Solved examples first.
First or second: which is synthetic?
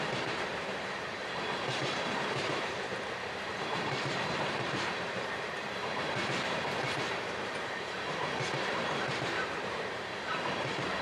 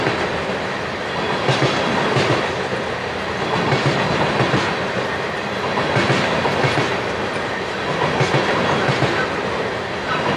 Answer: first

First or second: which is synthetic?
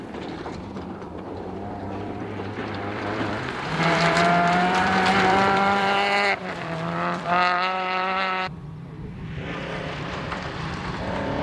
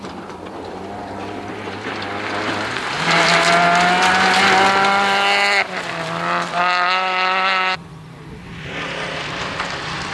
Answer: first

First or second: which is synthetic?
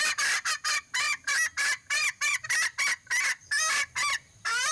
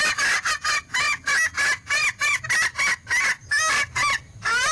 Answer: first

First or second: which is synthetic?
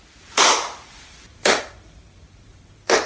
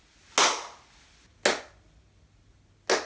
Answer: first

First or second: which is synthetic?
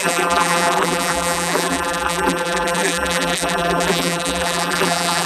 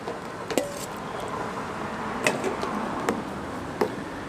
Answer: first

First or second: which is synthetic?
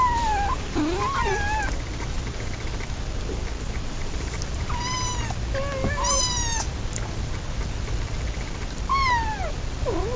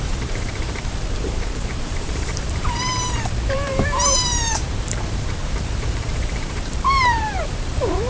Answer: second